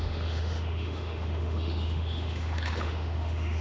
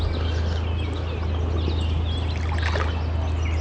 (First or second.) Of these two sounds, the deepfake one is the first